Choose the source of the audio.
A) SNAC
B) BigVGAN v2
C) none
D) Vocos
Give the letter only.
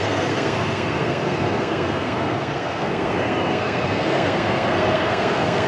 A